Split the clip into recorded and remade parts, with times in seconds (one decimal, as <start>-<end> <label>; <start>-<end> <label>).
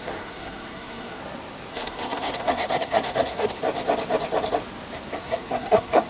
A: 0.0-1.2 remade; 1.2-1.7 recorded; 1.7-3.6 remade; 3.6-5.2 recorded; 5.2-6.1 remade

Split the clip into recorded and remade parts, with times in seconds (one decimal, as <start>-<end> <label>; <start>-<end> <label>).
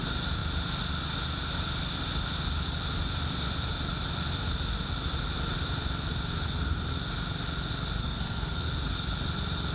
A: 0.0-8.0 recorded; 8.0-8.7 remade; 8.7-9.7 recorded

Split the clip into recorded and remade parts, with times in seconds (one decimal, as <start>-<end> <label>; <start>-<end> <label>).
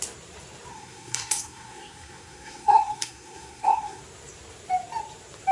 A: 0.0-0.7 recorded; 0.7-4.0 remade; 4.0-5.5 recorded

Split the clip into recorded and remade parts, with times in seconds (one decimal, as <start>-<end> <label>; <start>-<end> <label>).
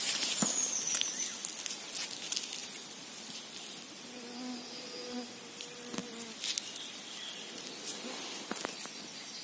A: 0.0-9.4 recorded